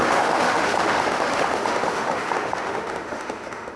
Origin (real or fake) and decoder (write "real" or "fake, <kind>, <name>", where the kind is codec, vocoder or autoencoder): fake, autoencoder, DAC-VAE